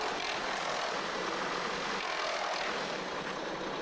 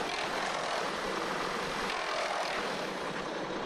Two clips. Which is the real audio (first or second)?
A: first